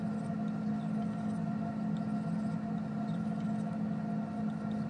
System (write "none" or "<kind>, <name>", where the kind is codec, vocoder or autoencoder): none